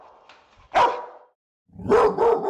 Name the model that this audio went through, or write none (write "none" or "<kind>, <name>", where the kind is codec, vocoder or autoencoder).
none